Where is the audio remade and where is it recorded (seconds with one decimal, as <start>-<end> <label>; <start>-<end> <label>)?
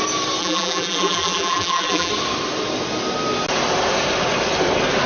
0.0-0.4 recorded; 0.4-2.1 remade; 2.1-5.1 recorded